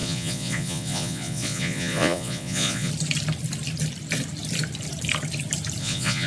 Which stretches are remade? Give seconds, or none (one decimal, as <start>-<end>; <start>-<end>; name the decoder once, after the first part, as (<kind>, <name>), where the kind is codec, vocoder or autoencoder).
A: 0.0-2.9 (vocoder, Vocos); 5.8-6.3